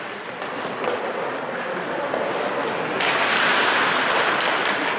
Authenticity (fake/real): real